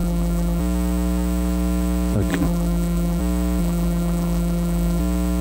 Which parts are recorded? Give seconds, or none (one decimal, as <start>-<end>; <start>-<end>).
0.6-2.3; 3.2-3.6; 5.0-5.4